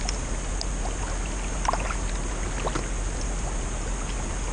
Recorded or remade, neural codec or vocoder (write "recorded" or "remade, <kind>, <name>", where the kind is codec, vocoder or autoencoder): recorded